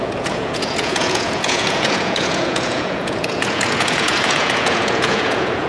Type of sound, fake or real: fake